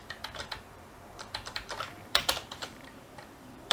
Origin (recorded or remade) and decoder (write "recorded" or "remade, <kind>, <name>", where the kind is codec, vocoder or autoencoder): remade, vocoder, BigVGAN v2